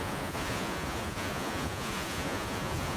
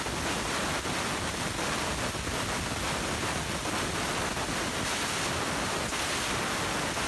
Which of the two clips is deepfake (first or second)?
first